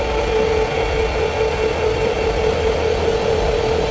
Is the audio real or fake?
real